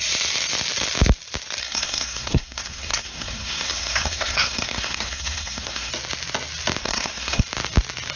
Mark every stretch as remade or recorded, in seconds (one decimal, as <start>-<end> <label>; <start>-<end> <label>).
0.0-1.6 recorded; 1.6-5.9 remade; 5.9-6.8 recorded; 6.8-7.4 remade; 7.4-8.2 recorded